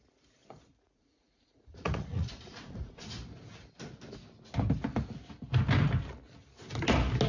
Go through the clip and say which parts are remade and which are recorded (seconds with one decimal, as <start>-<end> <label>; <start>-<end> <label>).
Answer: 0.0-0.4 recorded; 0.4-3.0 remade; 3.0-7.3 recorded